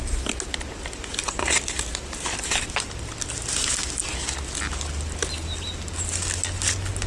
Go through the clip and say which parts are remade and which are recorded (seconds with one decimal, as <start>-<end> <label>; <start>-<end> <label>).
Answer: 0.0-7.1 recorded